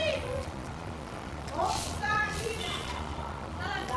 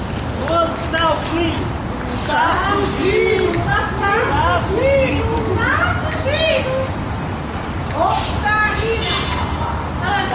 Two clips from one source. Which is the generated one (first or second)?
first